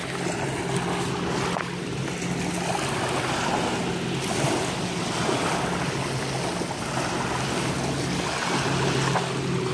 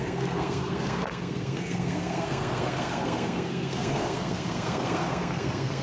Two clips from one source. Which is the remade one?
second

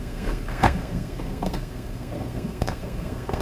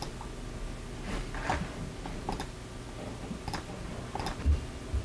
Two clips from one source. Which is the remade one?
first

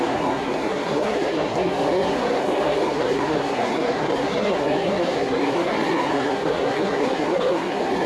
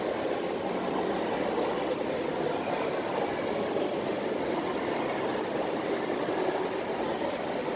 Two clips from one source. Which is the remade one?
first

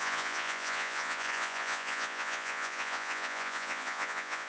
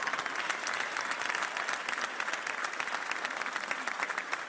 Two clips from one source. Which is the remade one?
first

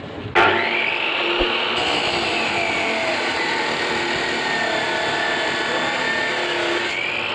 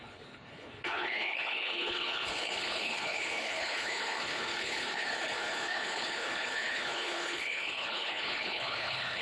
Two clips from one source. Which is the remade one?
second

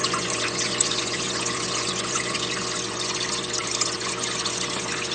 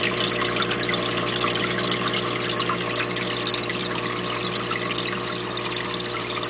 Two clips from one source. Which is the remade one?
first